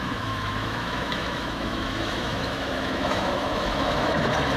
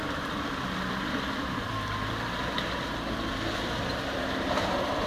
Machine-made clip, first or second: first